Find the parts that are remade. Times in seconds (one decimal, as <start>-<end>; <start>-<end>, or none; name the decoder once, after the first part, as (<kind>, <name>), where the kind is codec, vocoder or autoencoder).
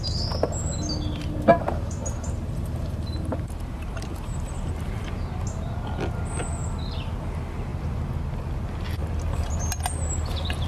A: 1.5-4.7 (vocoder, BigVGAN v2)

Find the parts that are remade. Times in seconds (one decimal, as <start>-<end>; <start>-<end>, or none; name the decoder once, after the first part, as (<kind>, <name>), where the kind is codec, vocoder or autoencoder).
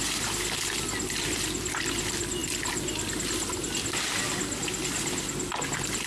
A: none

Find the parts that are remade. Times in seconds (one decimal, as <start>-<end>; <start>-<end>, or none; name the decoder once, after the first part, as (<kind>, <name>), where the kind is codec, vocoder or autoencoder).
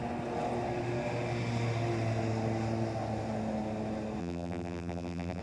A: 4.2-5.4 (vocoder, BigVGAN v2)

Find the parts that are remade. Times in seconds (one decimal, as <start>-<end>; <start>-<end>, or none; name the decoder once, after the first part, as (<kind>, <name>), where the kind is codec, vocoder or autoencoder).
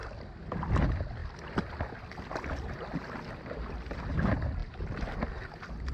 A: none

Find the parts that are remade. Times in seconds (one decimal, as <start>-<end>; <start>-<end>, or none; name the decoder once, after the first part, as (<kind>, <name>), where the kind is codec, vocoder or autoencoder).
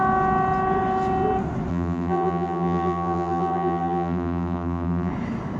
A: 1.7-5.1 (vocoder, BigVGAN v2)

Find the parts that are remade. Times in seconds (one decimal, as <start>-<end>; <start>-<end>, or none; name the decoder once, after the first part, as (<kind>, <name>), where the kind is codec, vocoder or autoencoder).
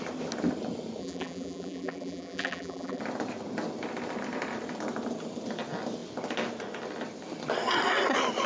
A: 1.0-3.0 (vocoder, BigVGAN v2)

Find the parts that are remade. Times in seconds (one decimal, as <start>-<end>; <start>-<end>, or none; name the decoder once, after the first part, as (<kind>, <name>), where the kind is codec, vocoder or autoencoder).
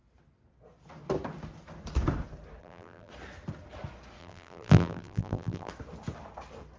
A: 2.6-3.1 (vocoder, BigVGAN v2); 4.2-5.7